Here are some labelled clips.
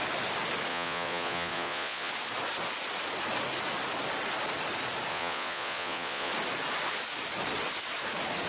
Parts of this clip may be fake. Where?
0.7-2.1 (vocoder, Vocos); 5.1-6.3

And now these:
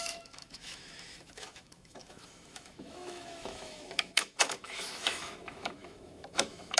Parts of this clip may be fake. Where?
0.0-6.8 (autoencoder, DAC-VAE)

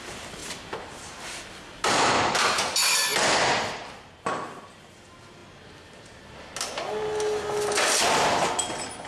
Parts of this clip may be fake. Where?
none

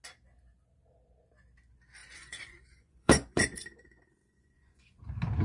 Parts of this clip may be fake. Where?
2.0-5.0 (vocoder, Vocos)

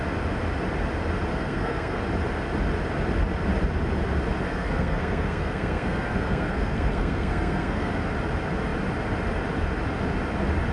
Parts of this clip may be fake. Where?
1.3-2.0 (codec, SNAC); 4.5-7.9

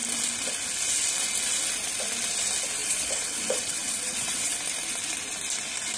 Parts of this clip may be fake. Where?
2.8-4.6 (vocoder, WaveNeXt)

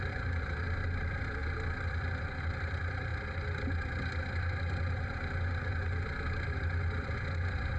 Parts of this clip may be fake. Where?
none